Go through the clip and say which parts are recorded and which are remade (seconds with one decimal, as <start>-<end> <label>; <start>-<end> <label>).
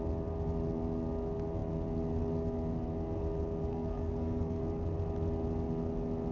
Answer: 0.0-3.7 recorded; 3.7-4.6 remade; 4.6-6.3 recorded